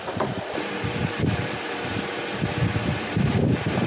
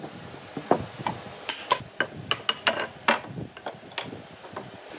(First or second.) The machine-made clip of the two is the first